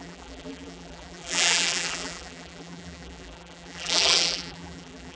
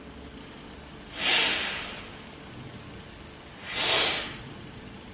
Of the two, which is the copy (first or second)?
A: first